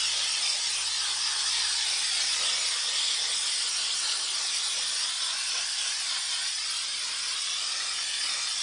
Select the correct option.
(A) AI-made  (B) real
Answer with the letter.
B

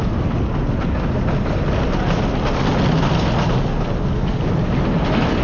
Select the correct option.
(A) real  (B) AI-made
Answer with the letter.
A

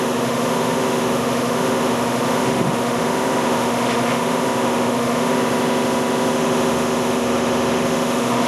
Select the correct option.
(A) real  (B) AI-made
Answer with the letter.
B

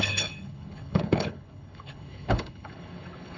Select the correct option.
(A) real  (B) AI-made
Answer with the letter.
B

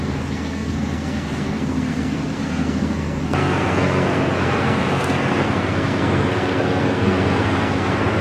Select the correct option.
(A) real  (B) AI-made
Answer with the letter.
B